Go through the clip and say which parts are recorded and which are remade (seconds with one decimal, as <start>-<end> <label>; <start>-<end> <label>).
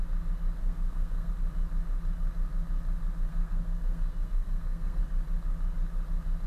0.0-0.6 recorded; 0.6-1.3 remade; 1.3-3.3 recorded; 3.3-5.0 remade; 5.0-6.5 recorded